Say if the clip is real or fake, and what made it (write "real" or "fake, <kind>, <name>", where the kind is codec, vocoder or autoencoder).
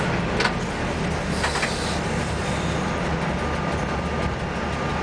real